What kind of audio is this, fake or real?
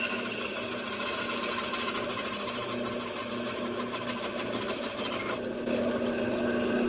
real